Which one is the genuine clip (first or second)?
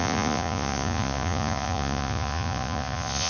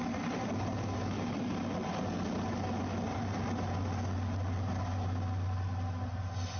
second